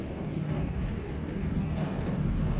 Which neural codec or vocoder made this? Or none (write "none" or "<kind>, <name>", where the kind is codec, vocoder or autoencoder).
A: codec, DAC